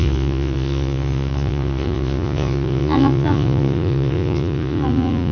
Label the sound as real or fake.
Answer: fake